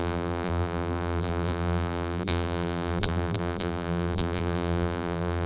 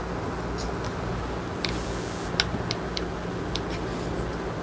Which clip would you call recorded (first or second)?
second